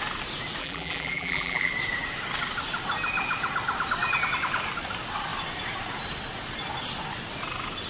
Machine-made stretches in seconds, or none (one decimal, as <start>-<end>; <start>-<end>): 0.6-1.7